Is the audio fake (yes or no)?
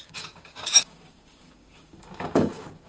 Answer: yes